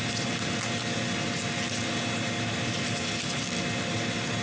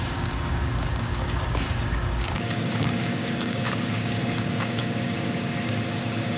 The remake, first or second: second